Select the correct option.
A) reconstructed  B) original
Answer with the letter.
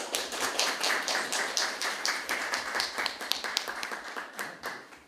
A